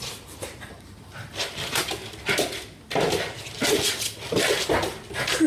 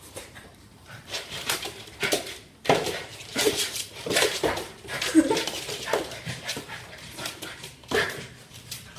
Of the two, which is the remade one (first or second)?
second